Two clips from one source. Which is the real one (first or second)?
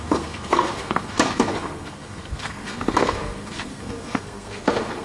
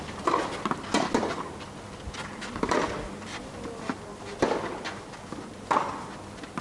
second